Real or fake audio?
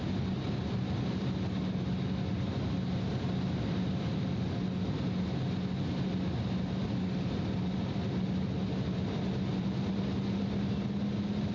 real